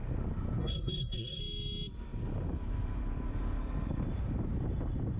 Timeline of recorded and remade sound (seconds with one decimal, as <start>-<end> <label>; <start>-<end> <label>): 0.0-0.6 recorded; 0.6-1.4 remade; 1.4-5.2 recorded